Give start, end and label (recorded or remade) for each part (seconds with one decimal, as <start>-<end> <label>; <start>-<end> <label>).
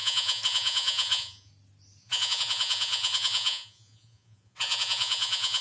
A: 0.0-1.5 remade; 1.5-2.0 recorded; 2.0-5.6 remade